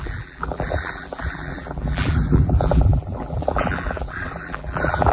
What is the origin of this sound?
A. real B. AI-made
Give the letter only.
B